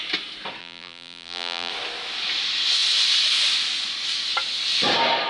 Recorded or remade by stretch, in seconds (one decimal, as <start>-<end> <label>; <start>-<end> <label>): 0.0-0.6 recorded; 0.6-1.7 remade; 1.7-5.3 recorded